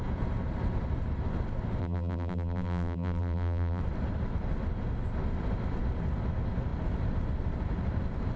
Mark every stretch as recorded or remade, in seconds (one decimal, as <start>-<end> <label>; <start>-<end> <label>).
0.0-1.8 recorded; 1.8-3.8 remade; 3.8-8.4 recorded